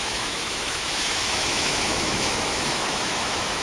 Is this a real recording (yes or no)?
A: no